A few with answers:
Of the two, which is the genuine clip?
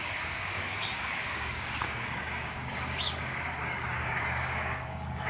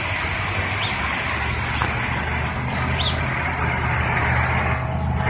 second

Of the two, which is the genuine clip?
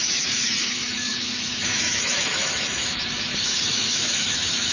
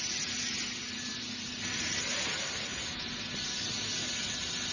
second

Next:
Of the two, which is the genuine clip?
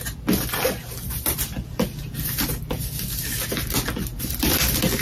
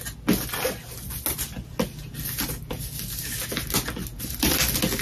second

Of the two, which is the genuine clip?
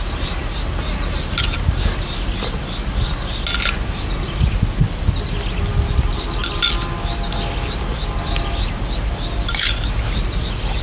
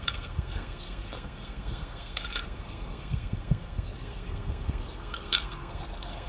first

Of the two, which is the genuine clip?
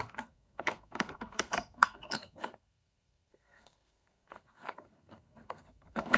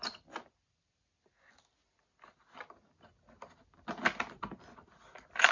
second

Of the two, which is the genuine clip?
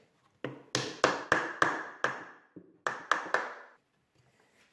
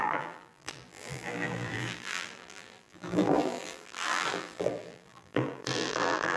first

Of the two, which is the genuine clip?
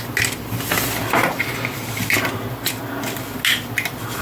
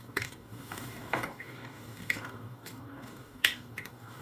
first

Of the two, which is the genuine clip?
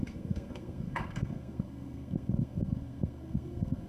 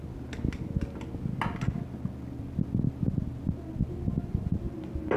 second